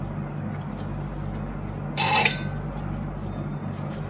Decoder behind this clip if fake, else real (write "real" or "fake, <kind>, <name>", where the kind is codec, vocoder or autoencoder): real